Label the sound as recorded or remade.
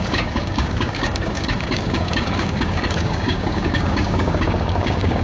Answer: remade